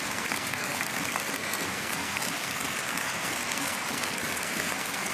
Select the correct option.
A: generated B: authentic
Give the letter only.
A